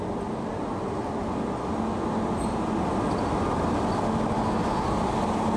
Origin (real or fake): real